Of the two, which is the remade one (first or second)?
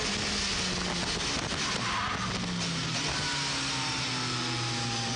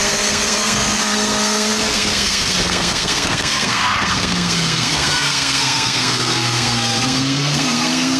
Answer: second